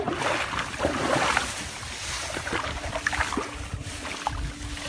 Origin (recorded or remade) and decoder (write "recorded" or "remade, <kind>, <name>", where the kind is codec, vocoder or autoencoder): recorded